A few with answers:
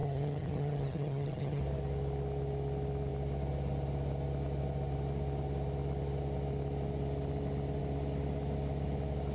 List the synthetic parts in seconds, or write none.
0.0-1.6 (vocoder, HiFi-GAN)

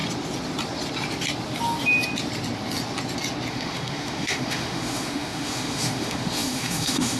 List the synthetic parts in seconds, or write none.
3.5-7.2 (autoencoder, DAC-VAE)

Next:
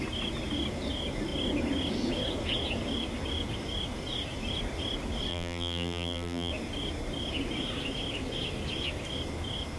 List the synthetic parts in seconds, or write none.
5.3-6.5 (vocoder, BigVGAN v2)